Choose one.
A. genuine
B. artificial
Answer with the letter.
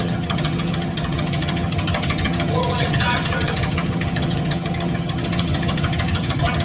B